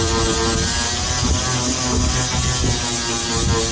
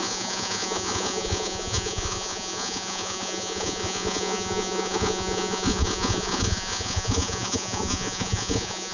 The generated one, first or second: second